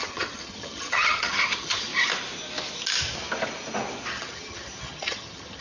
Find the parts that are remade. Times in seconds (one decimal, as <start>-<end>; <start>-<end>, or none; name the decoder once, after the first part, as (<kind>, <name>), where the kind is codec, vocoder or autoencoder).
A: 0.0-1.9 (vocoder, HiFi-GAN); 4.1-5.6